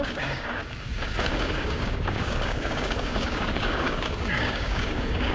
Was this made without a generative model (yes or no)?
no